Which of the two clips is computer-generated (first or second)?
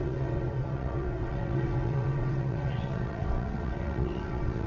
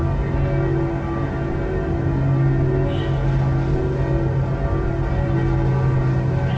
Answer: first